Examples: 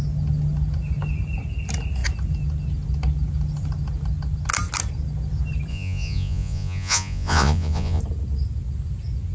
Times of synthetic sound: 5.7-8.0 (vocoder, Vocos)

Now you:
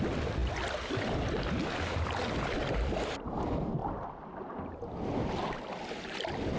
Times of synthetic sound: none

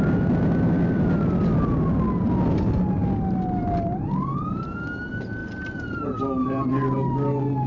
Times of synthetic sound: none

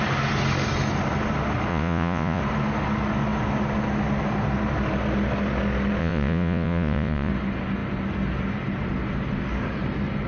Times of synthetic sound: 1.7-2.4 (vocoder, Vocos); 6.0-7.3

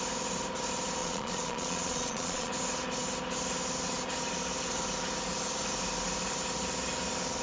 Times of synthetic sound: 1.0-2.5 (vocoder, Vocos)